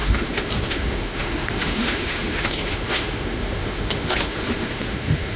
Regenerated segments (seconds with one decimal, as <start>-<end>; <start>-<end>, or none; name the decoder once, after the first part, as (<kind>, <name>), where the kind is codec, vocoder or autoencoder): 0.0-5.4 (autoencoder, DAC-VAE)